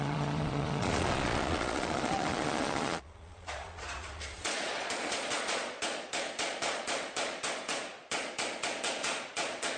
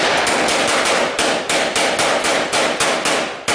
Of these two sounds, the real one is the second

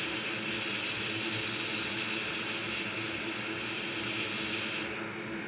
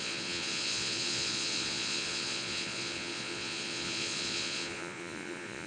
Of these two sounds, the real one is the first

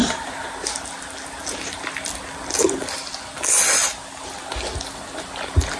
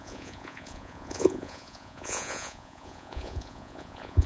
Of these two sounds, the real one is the first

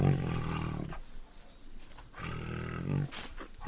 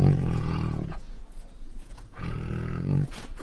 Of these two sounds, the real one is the first